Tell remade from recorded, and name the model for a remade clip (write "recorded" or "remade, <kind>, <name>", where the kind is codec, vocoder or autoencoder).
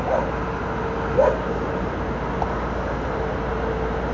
recorded